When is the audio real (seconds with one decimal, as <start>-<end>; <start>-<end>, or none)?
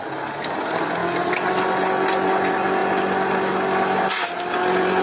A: 0.0-5.0